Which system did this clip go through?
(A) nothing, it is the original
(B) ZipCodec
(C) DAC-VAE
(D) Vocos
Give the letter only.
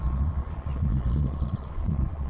D